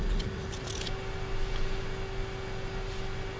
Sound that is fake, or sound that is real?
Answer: real